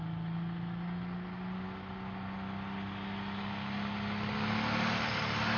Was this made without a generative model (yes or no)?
yes